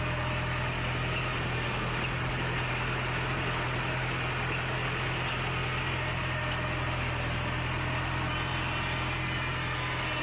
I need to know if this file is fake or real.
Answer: real